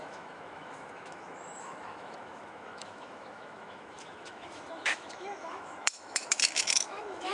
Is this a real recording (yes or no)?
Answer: no